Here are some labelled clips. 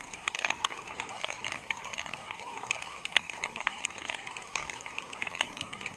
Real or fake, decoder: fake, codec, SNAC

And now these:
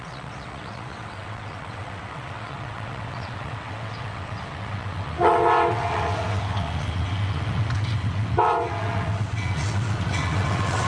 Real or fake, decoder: fake, vocoder, WaveNeXt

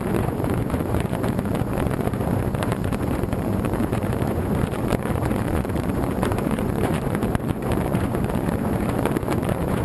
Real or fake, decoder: fake, vocoder, Vocos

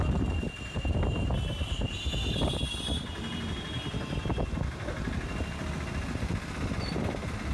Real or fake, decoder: real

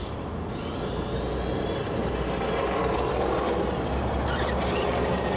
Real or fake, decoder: real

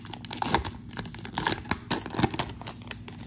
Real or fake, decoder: real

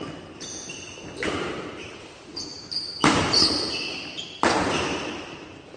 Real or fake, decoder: fake, vocoder, BigVGAN v2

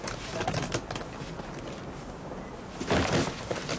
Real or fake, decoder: real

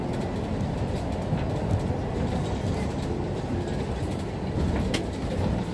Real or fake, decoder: real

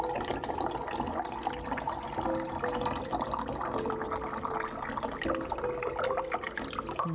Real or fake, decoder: real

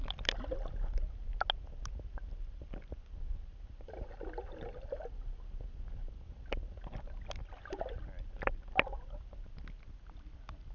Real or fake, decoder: real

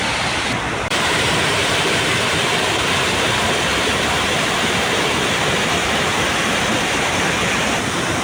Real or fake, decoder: fake, vocoder, BigVGAN v2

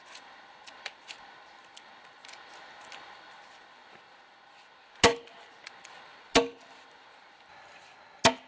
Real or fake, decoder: real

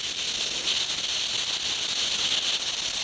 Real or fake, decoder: real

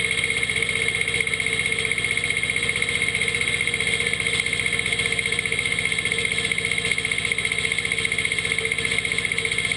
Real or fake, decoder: real